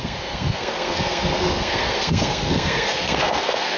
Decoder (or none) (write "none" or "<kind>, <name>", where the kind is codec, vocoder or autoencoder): codec, SNAC